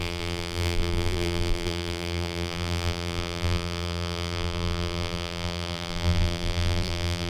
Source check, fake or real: fake